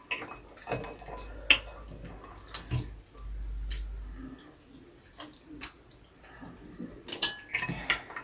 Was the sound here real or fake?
real